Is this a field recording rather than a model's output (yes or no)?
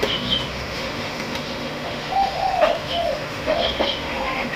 no